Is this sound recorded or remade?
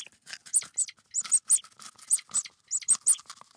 recorded